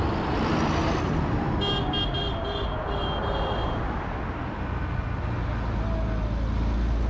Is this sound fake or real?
real